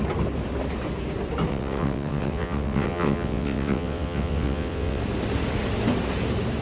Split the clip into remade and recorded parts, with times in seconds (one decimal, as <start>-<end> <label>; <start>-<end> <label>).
0.0-1.5 recorded; 1.5-5.0 remade; 5.0-6.6 recorded